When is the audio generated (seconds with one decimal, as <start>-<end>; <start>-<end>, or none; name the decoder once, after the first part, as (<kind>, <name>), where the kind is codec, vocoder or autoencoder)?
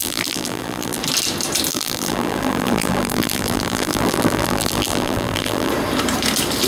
0.0-1.0 (vocoder, BigVGAN v2); 1.7-5.7